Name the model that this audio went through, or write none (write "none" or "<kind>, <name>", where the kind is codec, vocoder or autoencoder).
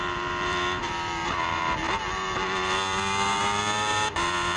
vocoder, BigVGAN v2